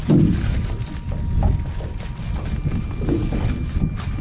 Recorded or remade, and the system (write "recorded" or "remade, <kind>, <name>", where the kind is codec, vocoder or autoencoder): recorded